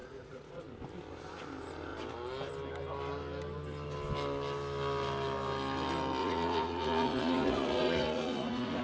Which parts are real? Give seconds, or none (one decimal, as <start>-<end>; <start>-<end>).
0.6-6.2